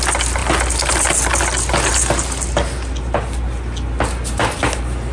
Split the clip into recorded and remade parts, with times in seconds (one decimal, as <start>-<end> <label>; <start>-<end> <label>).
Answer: 0.0-5.1 recorded